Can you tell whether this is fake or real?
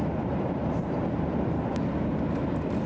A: fake